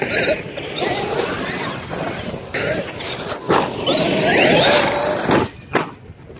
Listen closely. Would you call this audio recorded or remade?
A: recorded